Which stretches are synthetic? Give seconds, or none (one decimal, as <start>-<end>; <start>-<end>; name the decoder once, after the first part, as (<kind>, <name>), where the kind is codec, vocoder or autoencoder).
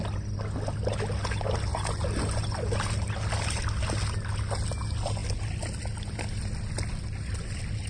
none